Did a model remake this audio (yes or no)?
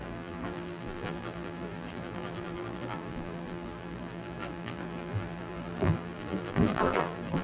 yes